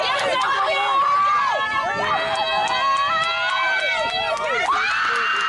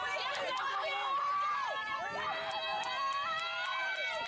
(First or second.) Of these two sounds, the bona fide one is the first